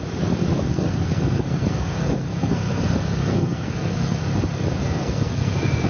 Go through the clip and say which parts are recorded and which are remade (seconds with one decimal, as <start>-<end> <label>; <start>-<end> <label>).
0.0-0.7 recorded; 0.7-4.2 remade; 4.2-4.8 recorded; 4.8-5.9 remade